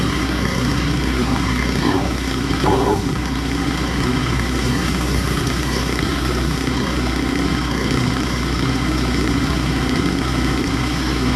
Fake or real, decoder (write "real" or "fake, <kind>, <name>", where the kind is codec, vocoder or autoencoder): fake, codec, SNAC